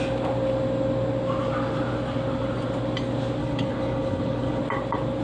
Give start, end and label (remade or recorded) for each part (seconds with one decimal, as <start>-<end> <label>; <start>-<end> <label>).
0.0-3.4 recorded; 3.4-4.6 remade; 4.6-5.2 recorded